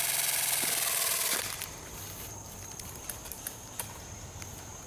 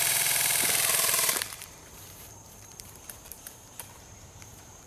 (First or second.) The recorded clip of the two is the first